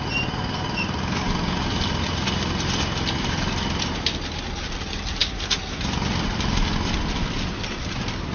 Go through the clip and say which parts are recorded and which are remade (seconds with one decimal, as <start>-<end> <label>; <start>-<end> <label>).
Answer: 0.0-8.3 recorded

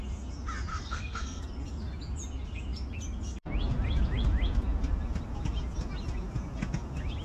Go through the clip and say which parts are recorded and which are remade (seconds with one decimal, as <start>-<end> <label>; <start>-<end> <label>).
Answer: 0.0-0.7 recorded; 0.7-1.4 remade; 1.4-7.2 recorded

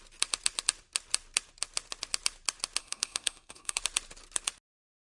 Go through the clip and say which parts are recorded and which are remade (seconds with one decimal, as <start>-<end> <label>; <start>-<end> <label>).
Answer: 0.0-2.8 recorded; 2.8-3.8 remade; 3.8-5.1 recorded

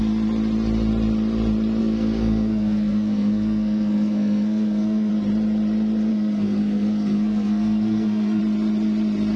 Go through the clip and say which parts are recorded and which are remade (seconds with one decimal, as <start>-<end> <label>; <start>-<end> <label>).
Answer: 0.0-1.8 recorded; 1.8-5.1 remade; 5.1-6.1 recorded; 6.1-8.4 remade; 8.4-9.4 recorded